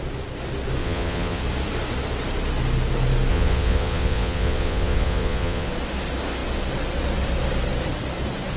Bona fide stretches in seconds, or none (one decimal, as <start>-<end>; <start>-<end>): 0.0-0.8; 1.4-3.3; 5.7-8.6